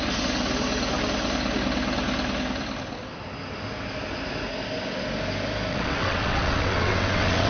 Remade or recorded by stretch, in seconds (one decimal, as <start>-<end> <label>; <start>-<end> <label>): 0.0-5.7 recorded; 5.7-7.5 remade

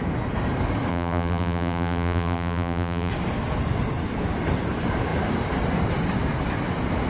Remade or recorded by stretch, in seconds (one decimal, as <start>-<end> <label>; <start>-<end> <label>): 0.0-0.9 recorded; 0.9-3.1 remade; 3.1-7.1 recorded

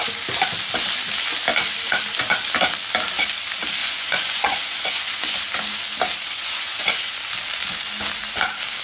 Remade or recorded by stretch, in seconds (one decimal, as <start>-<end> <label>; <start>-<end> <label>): 0.0-3.8 recorded; 3.8-5.4 remade; 5.4-6.2 recorded; 6.2-7.1 remade; 7.1-8.8 recorded

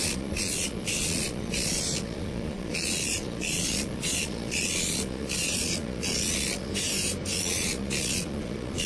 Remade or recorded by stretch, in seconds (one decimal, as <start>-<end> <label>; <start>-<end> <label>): 0.0-6.7 remade; 6.7-7.3 recorded; 7.3-8.9 remade

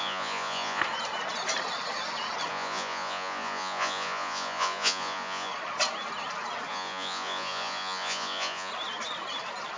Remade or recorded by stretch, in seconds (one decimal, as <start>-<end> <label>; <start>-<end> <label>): 0.0-0.8 remade; 0.8-2.5 recorded; 2.5-5.5 remade; 5.5-6.7 recorded; 6.7-8.7 remade; 8.7-9.8 recorded

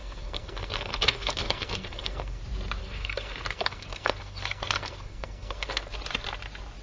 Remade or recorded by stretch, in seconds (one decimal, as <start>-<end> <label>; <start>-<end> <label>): 0.0-2.4 remade; 2.4-2.8 recorded; 2.8-5.9 remade; 5.9-6.8 recorded

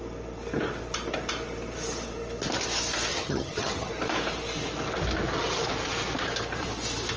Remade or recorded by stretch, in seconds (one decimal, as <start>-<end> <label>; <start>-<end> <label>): 0.0-3.1 recorded; 3.1-3.9 remade; 3.9-7.2 recorded